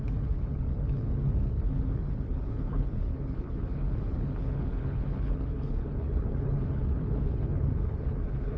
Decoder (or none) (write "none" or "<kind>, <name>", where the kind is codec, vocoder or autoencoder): codec, HILCodec